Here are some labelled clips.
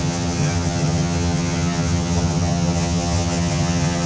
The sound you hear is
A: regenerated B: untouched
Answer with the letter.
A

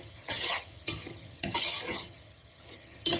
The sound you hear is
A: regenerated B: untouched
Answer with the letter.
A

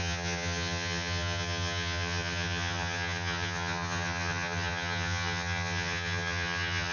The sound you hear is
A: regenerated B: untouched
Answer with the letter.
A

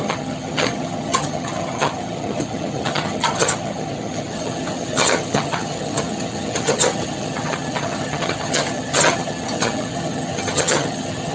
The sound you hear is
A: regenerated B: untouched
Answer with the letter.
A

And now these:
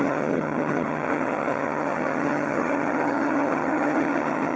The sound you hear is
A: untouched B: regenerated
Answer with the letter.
B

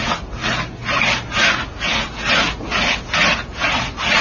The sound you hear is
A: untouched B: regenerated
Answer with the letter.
A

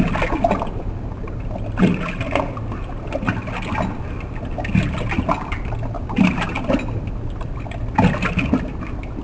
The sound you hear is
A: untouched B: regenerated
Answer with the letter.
A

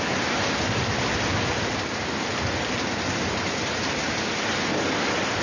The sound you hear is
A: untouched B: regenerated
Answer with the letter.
A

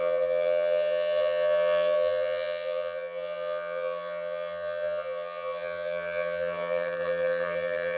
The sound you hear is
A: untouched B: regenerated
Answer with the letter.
B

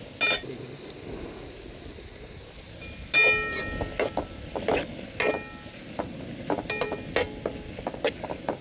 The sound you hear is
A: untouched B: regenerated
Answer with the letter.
A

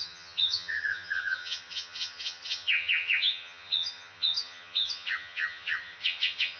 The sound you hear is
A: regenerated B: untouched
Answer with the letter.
A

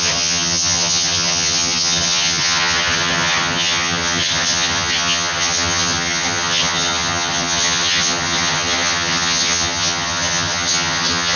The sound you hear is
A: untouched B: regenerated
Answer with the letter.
B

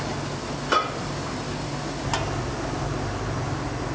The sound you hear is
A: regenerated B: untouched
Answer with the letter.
B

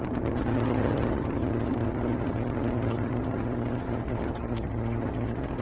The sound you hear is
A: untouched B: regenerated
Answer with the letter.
B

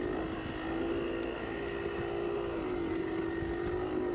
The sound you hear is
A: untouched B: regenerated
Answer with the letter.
A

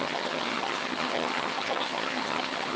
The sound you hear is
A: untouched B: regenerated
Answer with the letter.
B